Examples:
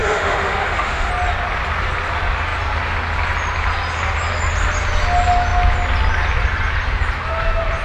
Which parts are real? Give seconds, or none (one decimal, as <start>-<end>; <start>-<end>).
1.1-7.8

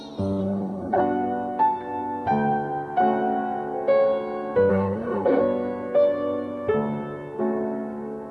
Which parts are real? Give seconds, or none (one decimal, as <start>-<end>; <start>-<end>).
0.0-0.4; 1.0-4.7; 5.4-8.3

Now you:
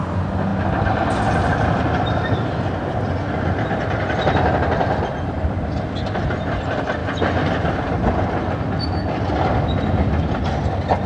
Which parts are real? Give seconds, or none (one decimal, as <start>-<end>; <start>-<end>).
0.0-11.1